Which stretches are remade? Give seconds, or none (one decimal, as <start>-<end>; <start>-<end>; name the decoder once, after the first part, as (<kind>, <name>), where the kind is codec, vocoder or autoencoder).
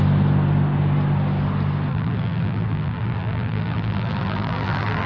1.9-5.1 (vocoder, BigVGAN v2)